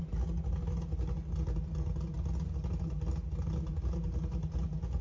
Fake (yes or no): no